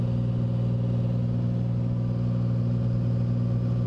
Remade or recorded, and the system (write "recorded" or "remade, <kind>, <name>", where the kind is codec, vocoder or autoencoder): recorded